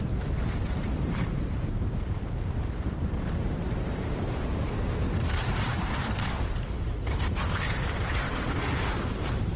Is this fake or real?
fake